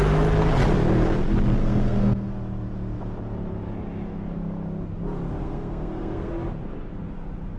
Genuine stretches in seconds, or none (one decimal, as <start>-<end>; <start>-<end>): 0.0-1.6; 2.3-5.4; 6.3-7.6